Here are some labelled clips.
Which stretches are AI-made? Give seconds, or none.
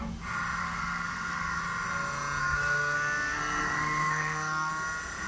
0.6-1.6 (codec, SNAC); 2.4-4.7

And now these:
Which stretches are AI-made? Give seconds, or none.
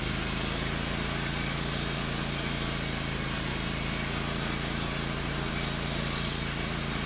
none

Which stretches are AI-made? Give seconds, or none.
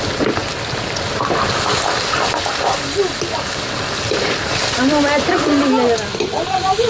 none